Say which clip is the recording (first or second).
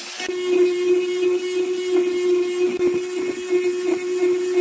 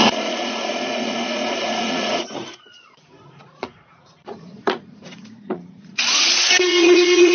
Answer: first